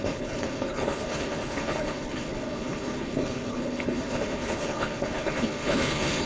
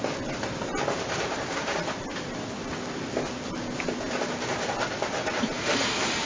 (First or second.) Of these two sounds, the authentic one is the second